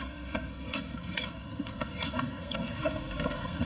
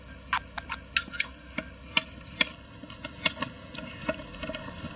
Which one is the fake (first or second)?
first